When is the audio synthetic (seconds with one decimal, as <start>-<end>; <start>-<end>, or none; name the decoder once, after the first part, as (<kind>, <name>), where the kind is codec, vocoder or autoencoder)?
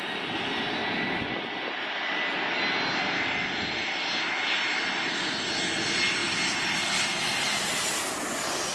none